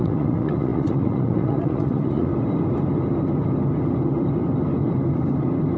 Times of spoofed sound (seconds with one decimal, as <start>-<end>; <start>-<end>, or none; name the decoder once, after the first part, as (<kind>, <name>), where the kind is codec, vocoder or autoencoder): 0.0-2.3 (vocoder, Vocos)